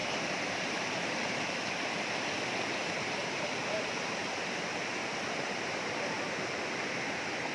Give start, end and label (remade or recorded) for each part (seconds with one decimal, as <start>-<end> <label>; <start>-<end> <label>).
0.0-1.7 remade; 1.7-2.8 recorded; 2.8-3.6 remade; 3.6-4.2 recorded; 4.2-5.9 remade; 5.9-7.5 recorded